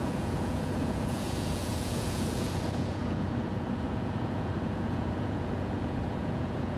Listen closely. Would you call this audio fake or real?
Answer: fake